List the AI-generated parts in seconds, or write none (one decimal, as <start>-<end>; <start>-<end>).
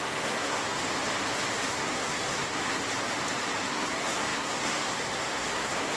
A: 0.0-0.8; 1.7-2.8; 3.7-6.0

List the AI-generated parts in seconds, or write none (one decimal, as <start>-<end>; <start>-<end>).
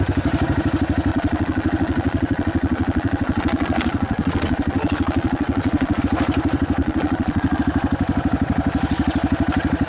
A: 1.1-6.0; 6.8-7.6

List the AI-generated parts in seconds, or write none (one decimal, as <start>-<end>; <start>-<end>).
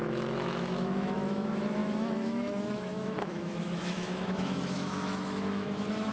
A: 0.0-6.1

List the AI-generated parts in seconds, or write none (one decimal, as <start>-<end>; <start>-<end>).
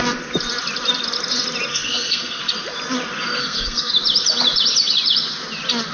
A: 1.7-2.4; 3.4-3.9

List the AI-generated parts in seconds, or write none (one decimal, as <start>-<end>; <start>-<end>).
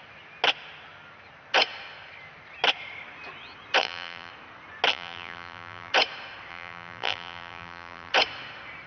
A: 3.8-4.3; 4.9-5.9; 6.5-8.1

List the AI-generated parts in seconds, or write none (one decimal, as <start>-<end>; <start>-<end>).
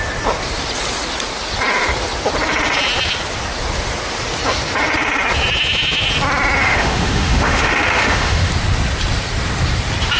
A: 6.6-8.5